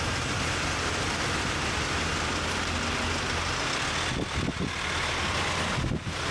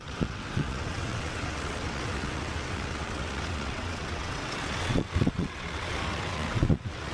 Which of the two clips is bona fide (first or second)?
first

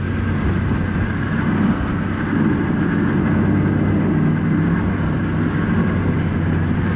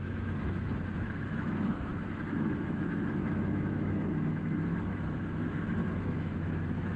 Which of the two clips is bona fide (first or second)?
first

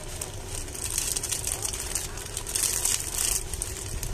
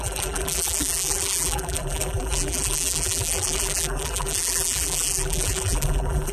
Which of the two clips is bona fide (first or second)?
first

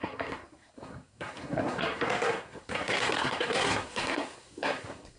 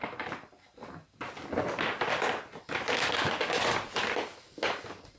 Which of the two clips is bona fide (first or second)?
second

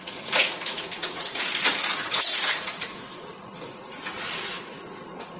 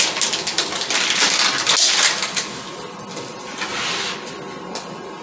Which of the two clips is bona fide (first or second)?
second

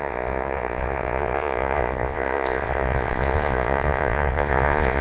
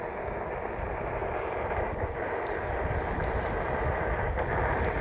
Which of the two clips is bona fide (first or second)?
second